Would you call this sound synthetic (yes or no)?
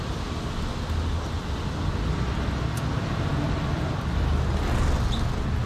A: no